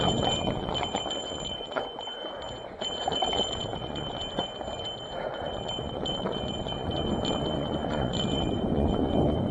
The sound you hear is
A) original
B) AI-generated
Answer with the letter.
B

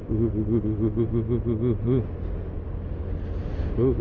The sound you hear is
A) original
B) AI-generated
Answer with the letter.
A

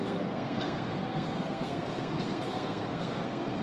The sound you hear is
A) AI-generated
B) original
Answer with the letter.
A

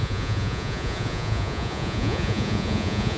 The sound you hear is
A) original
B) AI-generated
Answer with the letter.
B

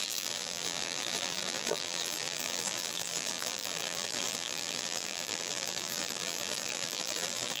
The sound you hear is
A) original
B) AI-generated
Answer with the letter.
B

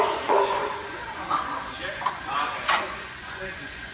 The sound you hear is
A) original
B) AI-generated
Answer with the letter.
B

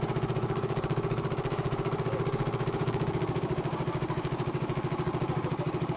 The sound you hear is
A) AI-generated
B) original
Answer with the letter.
A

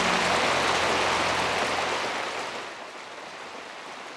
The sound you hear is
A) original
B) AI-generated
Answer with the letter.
A